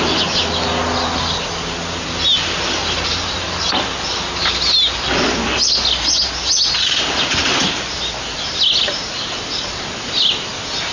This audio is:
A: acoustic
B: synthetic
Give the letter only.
A